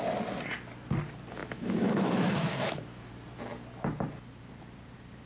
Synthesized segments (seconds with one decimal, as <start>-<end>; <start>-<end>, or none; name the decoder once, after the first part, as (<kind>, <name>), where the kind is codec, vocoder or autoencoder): 1.4-3.1 (autoencoder, DAC-VAE)